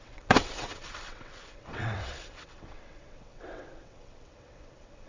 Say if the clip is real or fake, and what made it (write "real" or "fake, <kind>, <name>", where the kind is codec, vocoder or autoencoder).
fake, vocoder, WaveNeXt